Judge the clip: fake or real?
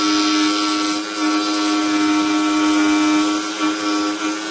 real